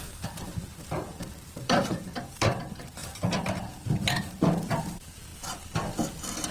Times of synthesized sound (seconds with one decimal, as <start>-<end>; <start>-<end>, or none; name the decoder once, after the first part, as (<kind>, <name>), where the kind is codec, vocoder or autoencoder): 0.0-5.3 (vocoder, BigVGAN v2)